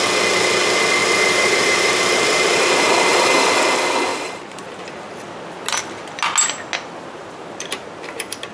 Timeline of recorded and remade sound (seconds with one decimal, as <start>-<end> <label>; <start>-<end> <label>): 0.0-1.0 recorded; 1.0-3.4 remade; 3.4-4.1 recorded; 4.1-4.8 remade; 4.8-7.2 recorded; 7.2-8.5 remade